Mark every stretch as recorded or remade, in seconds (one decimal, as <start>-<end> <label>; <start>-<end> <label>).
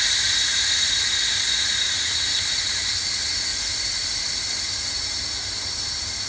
0.0-3.5 recorded; 3.5-4.2 remade; 4.2-6.3 recorded